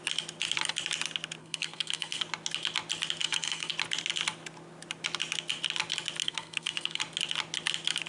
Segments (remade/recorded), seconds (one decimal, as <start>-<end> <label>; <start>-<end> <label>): 0.0-1.4 recorded; 1.4-2.2 remade; 2.2-3.2 recorded; 3.2-3.7 remade; 3.7-6.2 recorded; 6.2-7.0 remade; 7.0-8.1 recorded